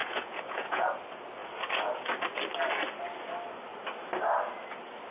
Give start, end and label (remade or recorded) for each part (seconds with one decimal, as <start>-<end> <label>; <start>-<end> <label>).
0.0-0.9 remade; 0.9-5.1 recorded